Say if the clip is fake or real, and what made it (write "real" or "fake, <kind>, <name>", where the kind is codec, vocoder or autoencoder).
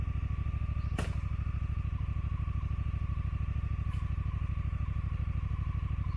real